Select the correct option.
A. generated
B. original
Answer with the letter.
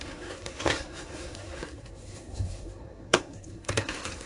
A